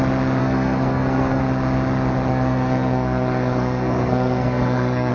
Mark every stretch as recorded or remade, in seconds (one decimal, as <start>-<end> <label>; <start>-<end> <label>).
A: 0.0-0.4 recorded; 0.4-1.4 remade; 1.4-2.3 recorded; 2.3-5.1 remade